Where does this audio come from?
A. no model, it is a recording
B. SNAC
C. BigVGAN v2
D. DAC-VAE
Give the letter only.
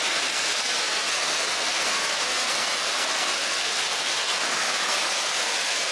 B